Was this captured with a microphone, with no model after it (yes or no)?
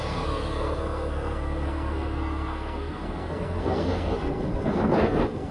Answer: no